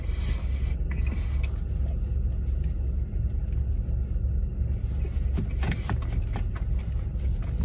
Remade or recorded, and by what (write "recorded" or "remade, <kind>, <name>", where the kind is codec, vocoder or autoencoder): recorded